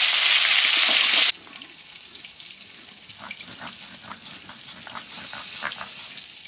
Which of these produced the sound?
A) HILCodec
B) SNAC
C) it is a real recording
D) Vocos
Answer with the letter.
C